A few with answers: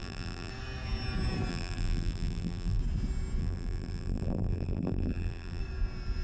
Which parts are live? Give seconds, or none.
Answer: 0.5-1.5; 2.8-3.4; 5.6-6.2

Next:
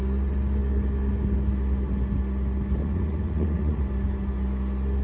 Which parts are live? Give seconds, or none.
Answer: 0.0-2.8; 3.8-5.0